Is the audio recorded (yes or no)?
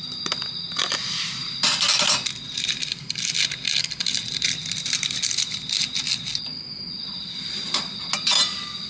yes